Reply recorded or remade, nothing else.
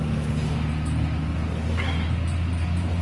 recorded